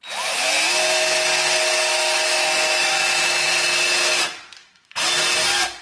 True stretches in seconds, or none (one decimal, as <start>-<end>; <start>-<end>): 0.0-1.9; 3.5-4.6; 5.2-5.8